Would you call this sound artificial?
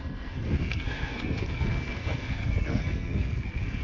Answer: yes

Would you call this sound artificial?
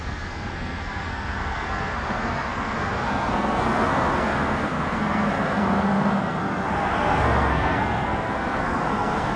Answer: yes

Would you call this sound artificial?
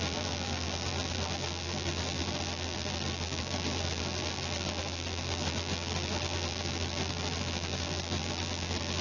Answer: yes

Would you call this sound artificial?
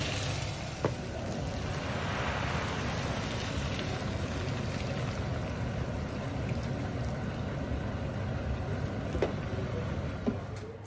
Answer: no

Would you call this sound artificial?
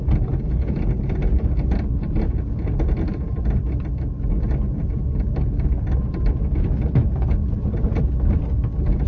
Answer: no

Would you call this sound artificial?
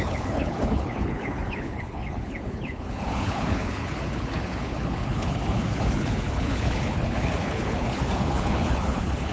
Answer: yes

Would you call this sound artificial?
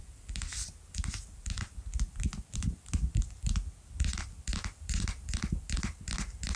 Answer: no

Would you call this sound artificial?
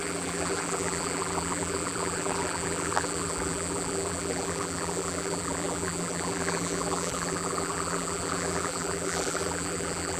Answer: yes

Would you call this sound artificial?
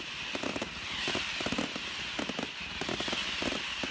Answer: no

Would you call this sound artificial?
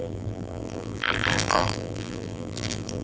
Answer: yes